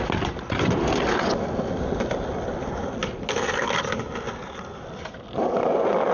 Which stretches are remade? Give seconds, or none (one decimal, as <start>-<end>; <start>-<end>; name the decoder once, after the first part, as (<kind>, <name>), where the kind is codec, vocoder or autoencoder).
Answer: none